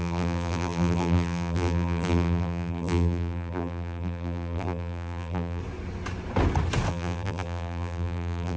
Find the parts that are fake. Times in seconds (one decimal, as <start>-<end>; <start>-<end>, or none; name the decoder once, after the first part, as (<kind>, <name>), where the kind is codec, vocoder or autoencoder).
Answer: 0.0-5.6 (vocoder, BigVGAN v2); 6.9-8.6